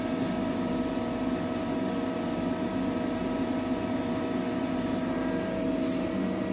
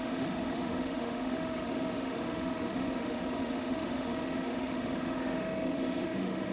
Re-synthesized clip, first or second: second